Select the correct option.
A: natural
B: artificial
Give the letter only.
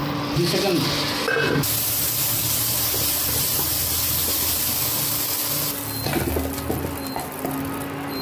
A